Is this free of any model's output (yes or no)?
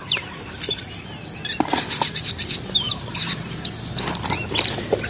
yes